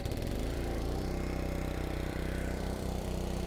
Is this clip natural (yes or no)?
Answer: no